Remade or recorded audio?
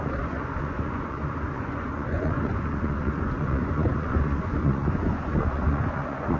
remade